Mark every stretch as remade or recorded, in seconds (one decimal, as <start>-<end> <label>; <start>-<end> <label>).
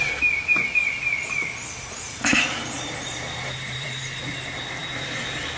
0.0-0.8 recorded; 0.8-4.2 remade; 4.2-4.8 recorded; 4.8-5.6 remade